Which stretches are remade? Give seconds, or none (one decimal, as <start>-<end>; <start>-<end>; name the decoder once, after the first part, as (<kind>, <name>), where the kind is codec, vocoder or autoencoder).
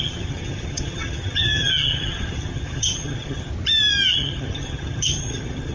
0.0-3.5 (vocoder, HiFi-GAN); 4.1-5.7